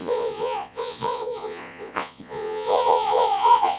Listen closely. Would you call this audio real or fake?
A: fake